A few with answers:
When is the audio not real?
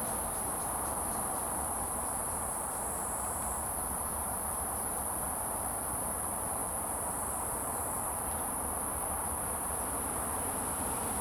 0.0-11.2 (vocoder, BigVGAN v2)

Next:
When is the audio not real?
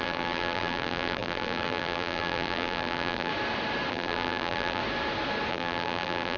0.0-3.3 (vocoder, BigVGAN v2); 3.9-4.8; 5.5-6.4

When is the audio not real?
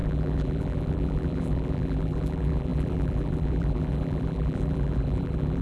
0.0-5.6 (vocoder, BigVGAN v2)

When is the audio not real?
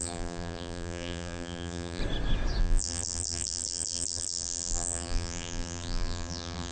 0.0-2.0 (vocoder, BigVGAN v2); 2.6-6.7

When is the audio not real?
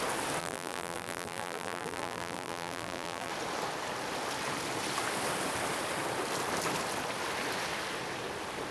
0.4-3.3 (vocoder, BigVGAN v2)